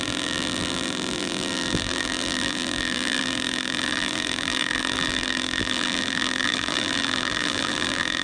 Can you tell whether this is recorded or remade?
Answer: remade